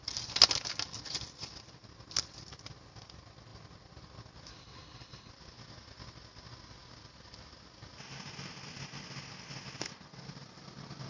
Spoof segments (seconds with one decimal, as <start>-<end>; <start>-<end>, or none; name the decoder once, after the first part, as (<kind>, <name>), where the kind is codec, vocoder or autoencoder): 4.5-5.3 (codec, HILCodec)